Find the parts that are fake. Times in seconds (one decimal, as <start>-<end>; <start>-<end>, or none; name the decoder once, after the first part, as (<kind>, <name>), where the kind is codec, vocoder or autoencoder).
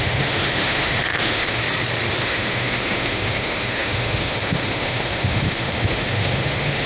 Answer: 0.0-1.6 (autoencoder, DAC-VAE); 2.2-6.9